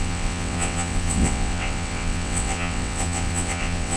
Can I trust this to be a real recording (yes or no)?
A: no